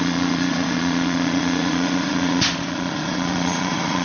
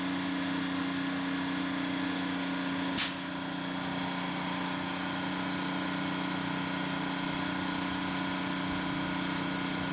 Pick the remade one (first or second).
first